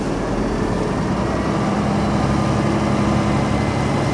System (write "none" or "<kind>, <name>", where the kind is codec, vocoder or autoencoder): none